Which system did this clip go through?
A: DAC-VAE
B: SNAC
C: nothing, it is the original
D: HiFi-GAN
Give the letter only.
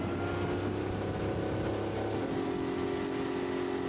C